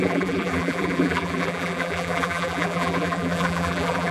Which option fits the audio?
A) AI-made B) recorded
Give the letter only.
A